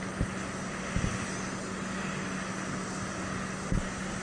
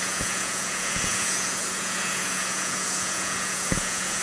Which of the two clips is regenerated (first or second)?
second